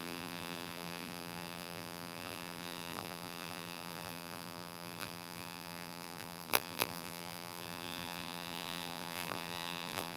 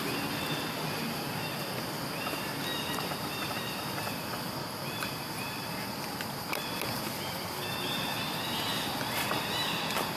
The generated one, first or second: first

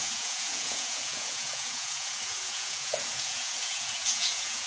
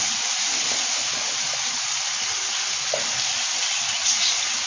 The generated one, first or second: first